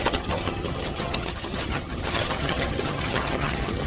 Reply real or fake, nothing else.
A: fake